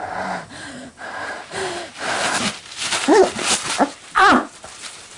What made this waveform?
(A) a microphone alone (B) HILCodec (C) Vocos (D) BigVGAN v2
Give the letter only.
D